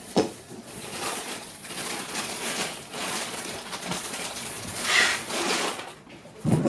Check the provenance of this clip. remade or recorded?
remade